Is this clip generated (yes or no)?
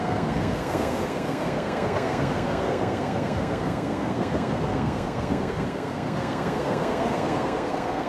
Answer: yes